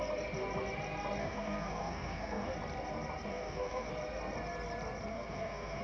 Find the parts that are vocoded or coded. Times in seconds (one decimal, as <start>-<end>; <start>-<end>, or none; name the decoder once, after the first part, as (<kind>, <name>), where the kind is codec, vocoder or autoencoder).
1.2-2.5 (codec, SNAC); 3.3-3.9; 5.1-5.8